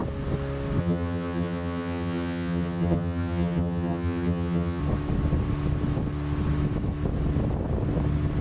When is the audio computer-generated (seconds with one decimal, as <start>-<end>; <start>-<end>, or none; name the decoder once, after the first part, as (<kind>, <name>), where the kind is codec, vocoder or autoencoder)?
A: 0.8-4.8 (vocoder, HiFi-GAN)